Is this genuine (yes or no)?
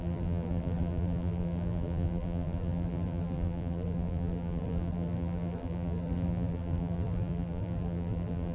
no